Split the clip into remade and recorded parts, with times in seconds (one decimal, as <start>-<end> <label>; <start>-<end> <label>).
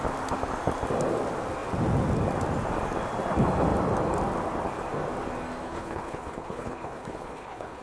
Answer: 0.0-5.6 recorded; 5.6-7.8 remade